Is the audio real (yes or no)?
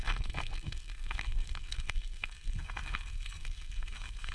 no